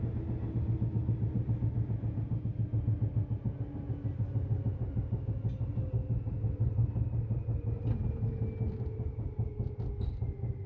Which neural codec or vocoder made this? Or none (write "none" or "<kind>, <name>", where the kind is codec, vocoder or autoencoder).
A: none